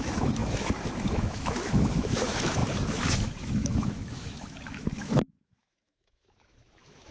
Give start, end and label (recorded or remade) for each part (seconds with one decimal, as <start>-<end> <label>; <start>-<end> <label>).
0.0-7.1 remade